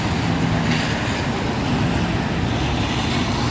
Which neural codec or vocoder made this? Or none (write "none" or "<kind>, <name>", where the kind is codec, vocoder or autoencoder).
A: none